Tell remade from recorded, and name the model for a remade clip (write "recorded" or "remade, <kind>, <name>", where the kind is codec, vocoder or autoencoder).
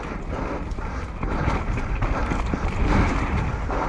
recorded